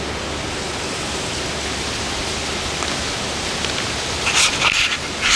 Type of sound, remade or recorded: recorded